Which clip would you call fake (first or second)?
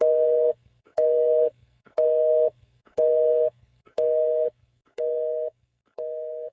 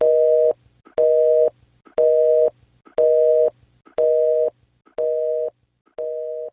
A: first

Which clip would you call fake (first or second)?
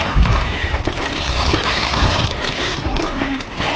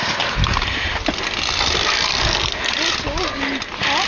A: first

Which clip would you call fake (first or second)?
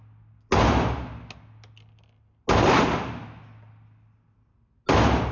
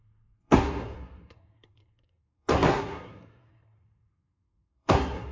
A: second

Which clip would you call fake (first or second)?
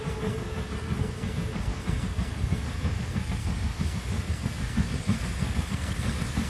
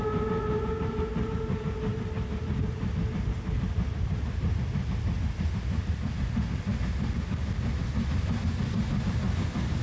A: first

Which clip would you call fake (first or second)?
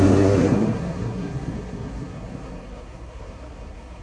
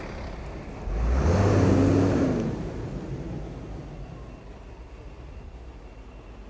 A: first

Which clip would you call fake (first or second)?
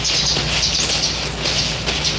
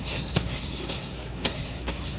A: second